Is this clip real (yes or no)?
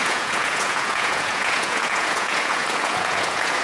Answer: no